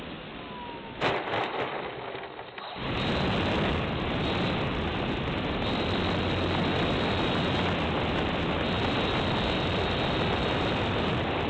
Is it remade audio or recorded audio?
recorded